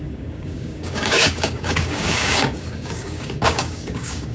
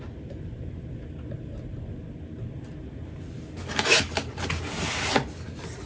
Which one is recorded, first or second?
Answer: second